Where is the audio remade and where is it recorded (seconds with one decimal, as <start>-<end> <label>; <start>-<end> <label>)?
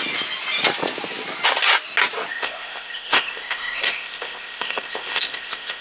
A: 0.0-2.3 recorded; 2.3-5.8 remade